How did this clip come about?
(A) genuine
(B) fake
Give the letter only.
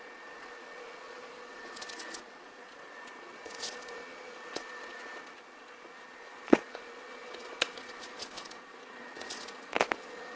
B